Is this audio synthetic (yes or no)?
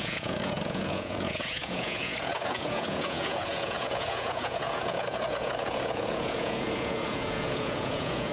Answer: yes